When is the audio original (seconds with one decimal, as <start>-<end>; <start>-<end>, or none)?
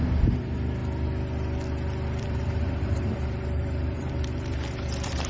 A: 0.8-2.2